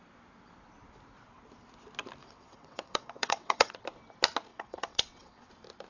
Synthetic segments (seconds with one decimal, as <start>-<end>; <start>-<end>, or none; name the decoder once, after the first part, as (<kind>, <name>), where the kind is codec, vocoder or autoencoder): 2.2-3.7 (vocoder, WaveNeXt); 4.5-5.5